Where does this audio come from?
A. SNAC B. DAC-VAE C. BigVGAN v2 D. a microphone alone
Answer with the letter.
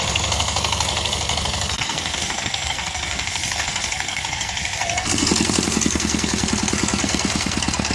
A